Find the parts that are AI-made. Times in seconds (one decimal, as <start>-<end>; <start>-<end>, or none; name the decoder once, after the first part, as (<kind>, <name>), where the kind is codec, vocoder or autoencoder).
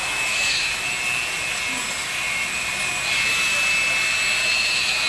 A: 0.0-0.8 (autoencoder, DAC-VAE); 2.0-2.5; 4.4-5.1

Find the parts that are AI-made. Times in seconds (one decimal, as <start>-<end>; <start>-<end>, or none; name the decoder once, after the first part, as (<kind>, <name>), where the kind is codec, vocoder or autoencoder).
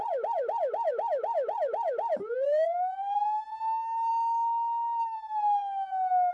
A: 4.1-5.4 (autoencoder, DAC-VAE)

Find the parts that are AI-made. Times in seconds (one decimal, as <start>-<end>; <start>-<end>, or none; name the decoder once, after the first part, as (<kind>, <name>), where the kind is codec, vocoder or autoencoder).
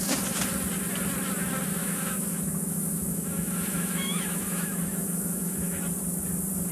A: 1.8-5.8 (autoencoder, DAC-VAE)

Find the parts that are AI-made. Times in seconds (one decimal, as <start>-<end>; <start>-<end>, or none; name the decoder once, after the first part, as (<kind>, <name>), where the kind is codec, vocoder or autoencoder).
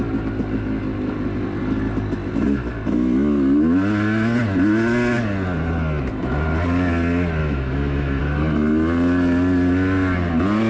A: 7.4-8.2 (autoencoder, DAC-VAE)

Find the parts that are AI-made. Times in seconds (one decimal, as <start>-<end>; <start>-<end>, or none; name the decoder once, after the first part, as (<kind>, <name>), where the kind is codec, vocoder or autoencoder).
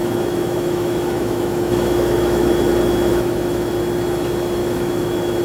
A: 0.0-2.5 (autoencoder, DAC-VAE); 3.1-3.7; 4.6-5.4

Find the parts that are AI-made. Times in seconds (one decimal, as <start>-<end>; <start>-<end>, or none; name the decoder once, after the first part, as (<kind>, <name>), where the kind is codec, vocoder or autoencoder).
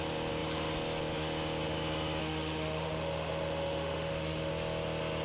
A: 2.2-4.5 (autoencoder, DAC-VAE)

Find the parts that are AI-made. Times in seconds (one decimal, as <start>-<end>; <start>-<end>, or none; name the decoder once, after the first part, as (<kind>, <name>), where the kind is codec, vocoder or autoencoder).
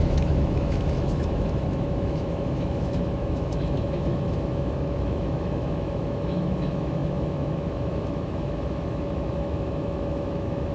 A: 0.0-10.7 (autoencoder, DAC-VAE)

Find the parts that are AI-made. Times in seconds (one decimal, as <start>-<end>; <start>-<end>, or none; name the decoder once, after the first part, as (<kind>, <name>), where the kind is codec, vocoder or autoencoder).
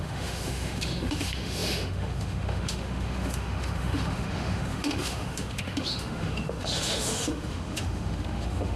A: 0.0-8.8 (autoencoder, DAC-VAE)